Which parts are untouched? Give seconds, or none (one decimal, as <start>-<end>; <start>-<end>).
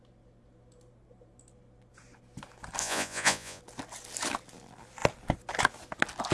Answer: 0.0-2.8; 3.6-6.3